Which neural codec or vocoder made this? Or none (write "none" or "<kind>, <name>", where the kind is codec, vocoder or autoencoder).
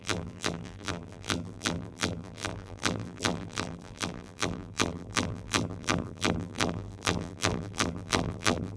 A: vocoder, BigVGAN v2